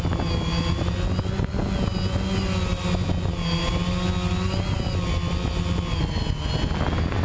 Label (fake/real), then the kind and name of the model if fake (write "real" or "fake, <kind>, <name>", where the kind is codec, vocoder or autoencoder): real